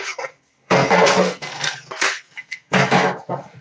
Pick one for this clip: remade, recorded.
remade